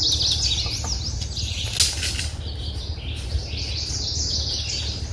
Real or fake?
real